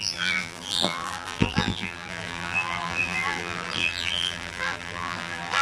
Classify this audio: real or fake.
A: fake